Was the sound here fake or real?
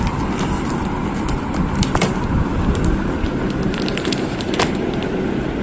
real